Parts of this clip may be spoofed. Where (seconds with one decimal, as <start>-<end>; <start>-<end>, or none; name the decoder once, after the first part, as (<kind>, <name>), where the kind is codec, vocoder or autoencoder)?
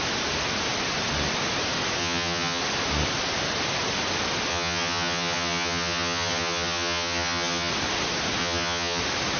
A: 2.0-2.6 (vocoder, HiFi-GAN); 4.5-7.7; 8.4-9.0